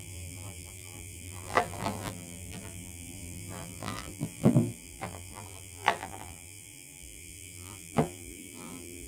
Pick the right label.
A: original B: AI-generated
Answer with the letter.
B